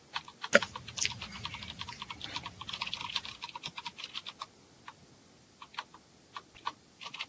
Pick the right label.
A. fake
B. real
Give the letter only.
B